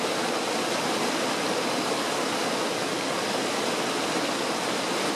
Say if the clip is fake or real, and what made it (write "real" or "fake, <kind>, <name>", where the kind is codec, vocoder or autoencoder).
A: real